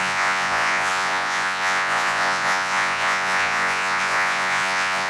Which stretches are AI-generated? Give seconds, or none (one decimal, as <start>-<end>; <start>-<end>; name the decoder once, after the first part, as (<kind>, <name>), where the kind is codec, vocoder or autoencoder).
0.0-5.1 (vocoder, Vocos)